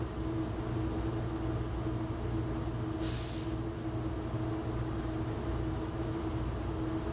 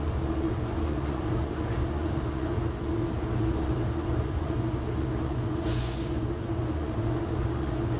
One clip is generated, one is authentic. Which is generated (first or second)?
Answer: second